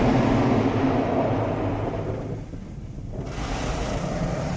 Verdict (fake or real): real